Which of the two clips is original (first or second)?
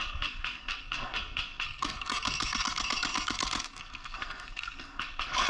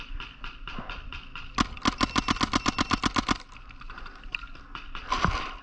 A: second